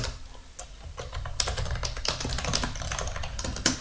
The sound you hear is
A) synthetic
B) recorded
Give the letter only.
B